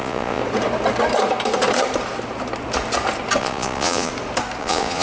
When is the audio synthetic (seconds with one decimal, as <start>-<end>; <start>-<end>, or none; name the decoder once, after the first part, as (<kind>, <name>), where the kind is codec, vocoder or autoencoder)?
0.0-0.4 (vocoder, Vocos); 3.4-4.1; 4.6-5.0